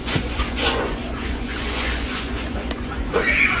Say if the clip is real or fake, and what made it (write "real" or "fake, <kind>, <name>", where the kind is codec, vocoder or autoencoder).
fake, vocoder, Vocos